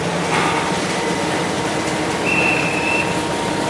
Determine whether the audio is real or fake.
real